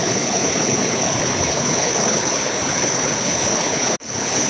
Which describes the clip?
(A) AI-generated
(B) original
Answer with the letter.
A